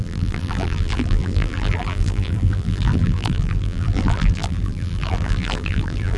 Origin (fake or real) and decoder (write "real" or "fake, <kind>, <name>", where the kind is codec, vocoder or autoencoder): fake, vocoder, BigVGAN v2